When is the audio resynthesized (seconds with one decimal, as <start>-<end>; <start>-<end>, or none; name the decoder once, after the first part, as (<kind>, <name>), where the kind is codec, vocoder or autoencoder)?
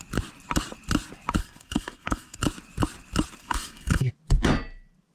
1.4-2.4 (codec, SNAC); 3.4-4.1